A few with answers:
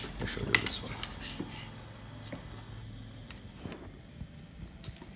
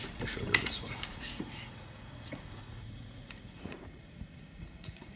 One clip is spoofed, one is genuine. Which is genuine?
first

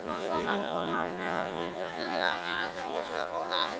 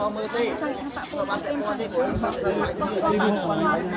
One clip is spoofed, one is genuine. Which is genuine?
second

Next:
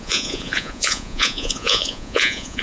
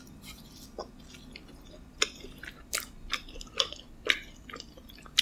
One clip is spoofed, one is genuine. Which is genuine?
second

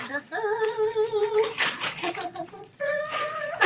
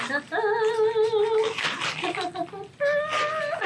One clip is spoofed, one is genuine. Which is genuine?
second